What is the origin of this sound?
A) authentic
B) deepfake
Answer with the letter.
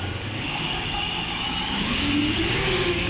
B